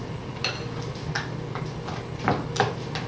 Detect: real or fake real